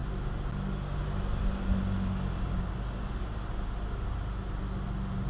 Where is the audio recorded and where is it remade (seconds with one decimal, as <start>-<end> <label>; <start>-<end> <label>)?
0.0-5.3 recorded